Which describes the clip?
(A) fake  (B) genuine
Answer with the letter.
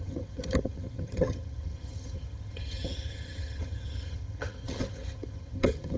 A